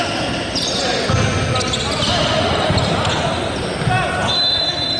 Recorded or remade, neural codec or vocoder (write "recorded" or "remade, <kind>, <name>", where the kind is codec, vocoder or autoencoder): recorded